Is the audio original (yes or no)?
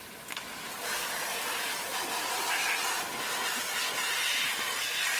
yes